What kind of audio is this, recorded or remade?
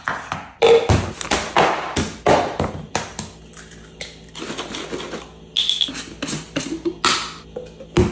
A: recorded